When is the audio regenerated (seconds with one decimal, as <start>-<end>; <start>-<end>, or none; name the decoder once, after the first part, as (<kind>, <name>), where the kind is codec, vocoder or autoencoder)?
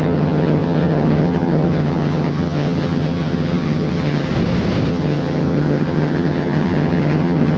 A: 0.0-4.3 (vocoder, HiFi-GAN); 4.9-7.6